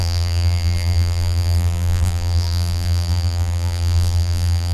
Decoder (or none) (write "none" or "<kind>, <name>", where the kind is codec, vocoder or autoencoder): vocoder, BigVGAN v2